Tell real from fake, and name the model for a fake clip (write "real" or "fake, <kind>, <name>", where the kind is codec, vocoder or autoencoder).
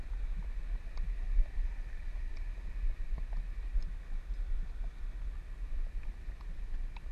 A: real